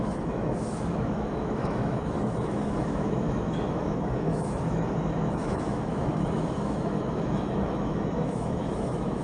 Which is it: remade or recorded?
remade